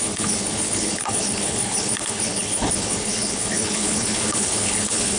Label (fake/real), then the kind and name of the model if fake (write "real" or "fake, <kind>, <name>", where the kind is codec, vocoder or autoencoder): fake, codec, HILCodec